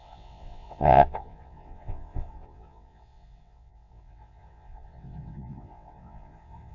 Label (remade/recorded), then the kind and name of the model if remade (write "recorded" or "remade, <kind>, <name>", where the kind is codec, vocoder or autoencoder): remade, vocoder, WaveNeXt